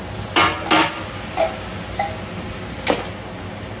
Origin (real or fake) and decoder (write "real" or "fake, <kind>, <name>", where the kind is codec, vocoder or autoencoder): real